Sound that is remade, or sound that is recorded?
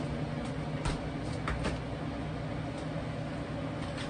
recorded